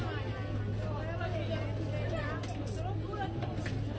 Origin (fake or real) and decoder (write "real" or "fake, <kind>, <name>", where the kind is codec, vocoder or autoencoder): real